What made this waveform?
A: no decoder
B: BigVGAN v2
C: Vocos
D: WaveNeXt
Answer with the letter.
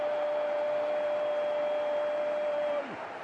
A